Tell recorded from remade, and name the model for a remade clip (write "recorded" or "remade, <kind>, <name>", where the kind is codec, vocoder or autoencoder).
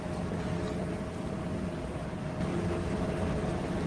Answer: recorded